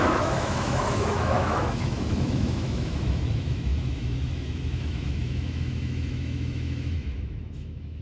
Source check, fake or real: fake